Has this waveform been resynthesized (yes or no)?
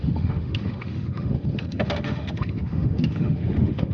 yes